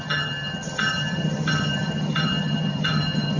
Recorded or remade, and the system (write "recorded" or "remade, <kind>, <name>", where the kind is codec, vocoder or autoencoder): remade, vocoder, HiFi-GAN